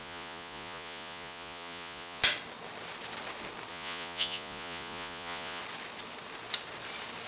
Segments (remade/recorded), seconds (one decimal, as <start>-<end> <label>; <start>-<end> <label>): 0.0-2.2 remade; 2.2-3.7 recorded; 3.7-5.6 remade; 5.6-7.3 recorded